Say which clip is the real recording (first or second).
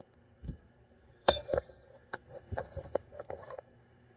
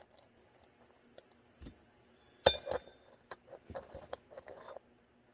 second